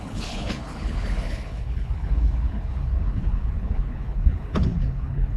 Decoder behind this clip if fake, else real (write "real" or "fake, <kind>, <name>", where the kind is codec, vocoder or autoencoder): fake, codec, HILCodec